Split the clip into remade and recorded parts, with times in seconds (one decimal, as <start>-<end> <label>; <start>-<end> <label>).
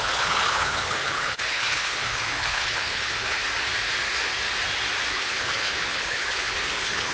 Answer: 0.0-3.4 remade; 3.4-5.1 recorded; 5.1-7.1 remade